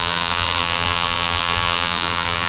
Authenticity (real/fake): fake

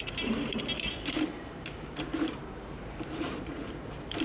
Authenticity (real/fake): fake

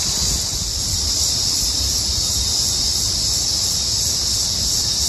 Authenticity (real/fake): fake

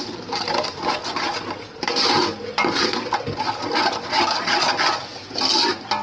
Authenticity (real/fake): real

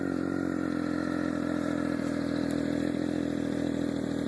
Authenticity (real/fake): fake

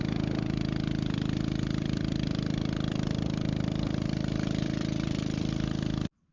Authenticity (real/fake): fake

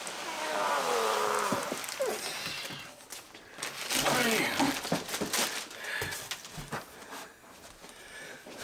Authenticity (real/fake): real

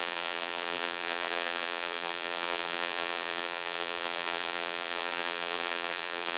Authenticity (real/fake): fake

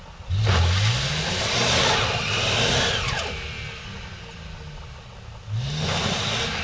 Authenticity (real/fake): real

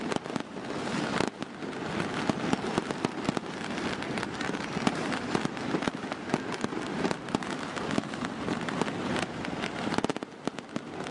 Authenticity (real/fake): fake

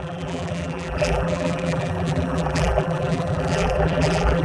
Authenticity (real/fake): fake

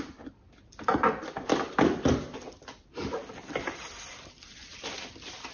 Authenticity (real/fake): fake